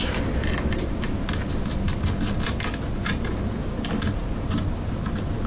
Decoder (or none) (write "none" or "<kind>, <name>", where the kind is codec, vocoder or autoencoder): none